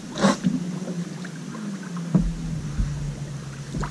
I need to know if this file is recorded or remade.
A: recorded